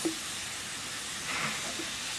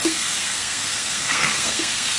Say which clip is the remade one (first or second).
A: second